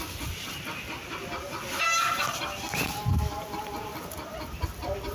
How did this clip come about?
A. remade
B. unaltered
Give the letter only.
B